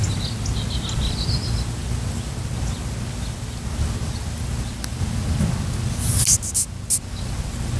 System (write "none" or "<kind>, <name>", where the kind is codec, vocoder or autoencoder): none